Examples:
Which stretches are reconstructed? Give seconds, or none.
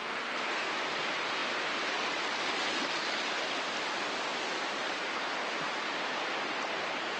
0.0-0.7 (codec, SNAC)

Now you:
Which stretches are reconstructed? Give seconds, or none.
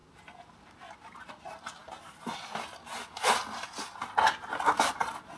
none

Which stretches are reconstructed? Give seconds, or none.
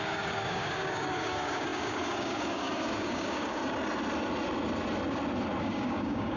0.0-3.6 (codec, DAC); 5.6-6.4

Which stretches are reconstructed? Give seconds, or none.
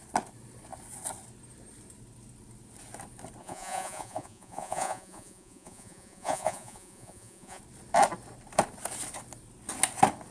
3.4-7.6 (vocoder, Vocos)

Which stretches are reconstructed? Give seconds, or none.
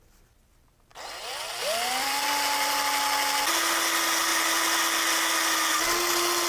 0.9-2.3 (vocoder, BigVGAN v2)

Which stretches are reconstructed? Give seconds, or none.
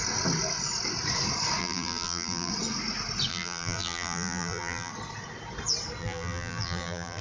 1.6-2.5 (vocoder, BigVGAN v2); 3.3-4.9; 6.0-7.2